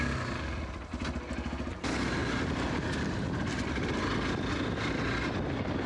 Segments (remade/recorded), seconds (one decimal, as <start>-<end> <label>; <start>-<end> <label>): 0.0-5.9 recorded